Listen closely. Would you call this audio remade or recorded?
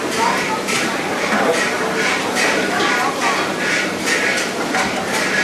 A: recorded